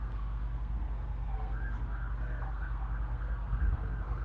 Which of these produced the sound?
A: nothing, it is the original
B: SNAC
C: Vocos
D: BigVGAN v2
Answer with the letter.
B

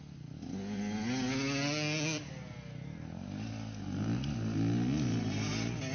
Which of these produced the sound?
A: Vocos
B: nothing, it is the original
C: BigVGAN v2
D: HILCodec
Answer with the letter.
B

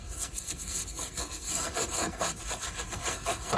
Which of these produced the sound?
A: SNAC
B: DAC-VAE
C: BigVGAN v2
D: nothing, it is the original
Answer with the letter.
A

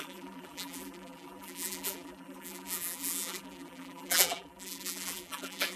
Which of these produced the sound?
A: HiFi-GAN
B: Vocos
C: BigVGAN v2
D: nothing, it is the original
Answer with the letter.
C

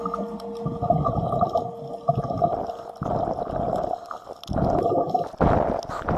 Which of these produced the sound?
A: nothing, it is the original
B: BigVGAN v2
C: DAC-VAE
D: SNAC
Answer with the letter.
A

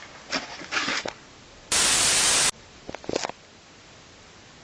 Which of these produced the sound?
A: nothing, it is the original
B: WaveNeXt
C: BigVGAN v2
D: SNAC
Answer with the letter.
A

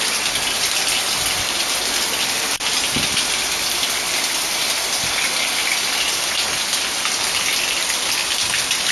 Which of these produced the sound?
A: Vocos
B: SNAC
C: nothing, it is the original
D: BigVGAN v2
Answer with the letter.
C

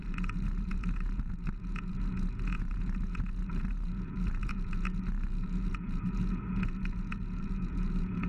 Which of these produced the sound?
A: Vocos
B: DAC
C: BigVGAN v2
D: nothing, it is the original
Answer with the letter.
A